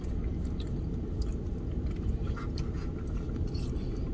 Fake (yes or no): yes